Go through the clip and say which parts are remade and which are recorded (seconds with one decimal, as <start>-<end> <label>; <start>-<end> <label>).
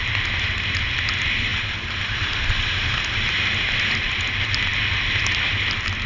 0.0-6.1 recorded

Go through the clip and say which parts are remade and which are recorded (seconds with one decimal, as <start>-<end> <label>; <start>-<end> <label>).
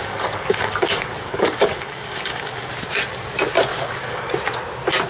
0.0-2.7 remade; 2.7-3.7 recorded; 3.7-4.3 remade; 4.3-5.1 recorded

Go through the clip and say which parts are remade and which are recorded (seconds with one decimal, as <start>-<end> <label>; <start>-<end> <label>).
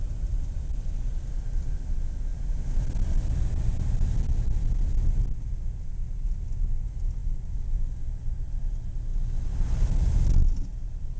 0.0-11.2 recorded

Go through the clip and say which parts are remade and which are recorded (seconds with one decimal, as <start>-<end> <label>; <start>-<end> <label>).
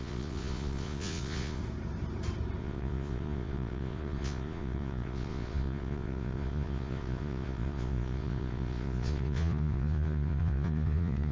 0.0-1.6 remade; 1.6-2.6 recorded; 2.6-11.3 remade